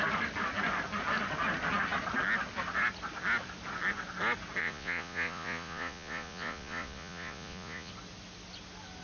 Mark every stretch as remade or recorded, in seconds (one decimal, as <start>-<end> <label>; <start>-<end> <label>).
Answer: 0.0-4.6 recorded; 4.6-7.9 remade; 7.9-9.0 recorded